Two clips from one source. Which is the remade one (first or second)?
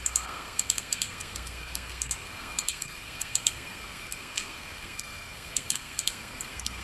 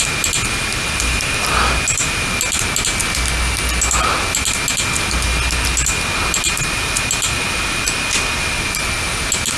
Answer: first